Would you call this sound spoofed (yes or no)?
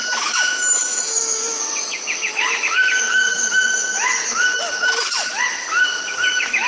yes